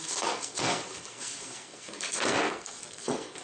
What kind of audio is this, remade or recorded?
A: remade